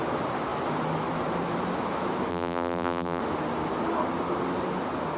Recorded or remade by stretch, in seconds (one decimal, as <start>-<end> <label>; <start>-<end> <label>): 0.0-2.3 recorded; 2.3-3.2 remade; 3.2-5.2 recorded